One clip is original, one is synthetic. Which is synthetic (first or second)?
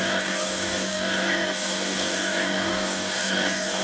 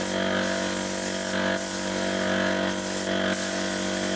first